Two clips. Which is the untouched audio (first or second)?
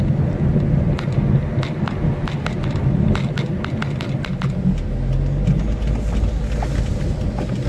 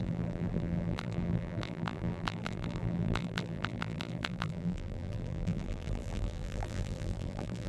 first